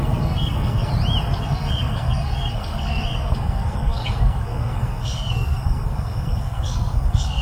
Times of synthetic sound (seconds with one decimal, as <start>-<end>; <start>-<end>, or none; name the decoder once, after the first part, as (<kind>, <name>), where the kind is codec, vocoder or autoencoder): 0.0-0.9 (codec, SNAC); 1.4-7.4